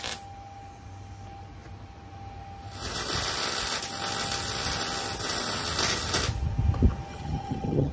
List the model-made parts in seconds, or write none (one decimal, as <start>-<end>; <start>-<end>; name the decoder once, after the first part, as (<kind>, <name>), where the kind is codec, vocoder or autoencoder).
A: 7.1-7.9 (vocoder, HiFi-GAN)